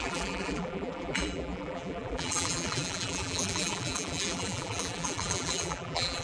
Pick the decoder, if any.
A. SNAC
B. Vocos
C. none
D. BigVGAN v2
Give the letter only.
D